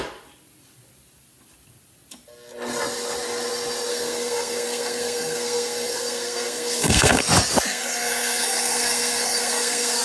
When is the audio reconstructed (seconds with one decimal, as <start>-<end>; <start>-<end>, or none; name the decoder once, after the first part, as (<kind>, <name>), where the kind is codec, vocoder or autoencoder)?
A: 3.9-7.2 (codec, SNAC); 7.7-10.0